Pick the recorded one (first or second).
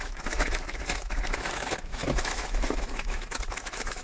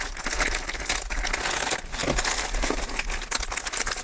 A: second